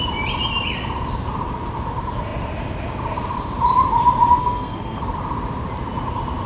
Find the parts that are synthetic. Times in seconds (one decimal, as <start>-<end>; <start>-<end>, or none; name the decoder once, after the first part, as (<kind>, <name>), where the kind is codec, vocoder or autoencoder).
4.4-5.0 (codec, SNAC)